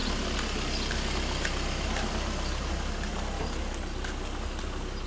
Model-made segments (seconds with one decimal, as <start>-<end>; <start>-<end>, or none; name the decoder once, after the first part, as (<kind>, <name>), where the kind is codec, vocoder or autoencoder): none